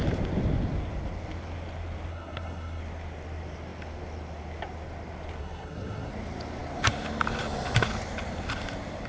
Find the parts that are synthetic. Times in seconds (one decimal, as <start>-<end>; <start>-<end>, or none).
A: 2.1-2.8; 5.4-6.1